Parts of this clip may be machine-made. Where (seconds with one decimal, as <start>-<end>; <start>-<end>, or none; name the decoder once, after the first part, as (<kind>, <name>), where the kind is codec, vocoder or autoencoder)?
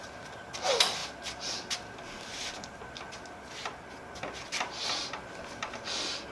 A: none